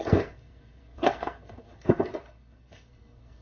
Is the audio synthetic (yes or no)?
yes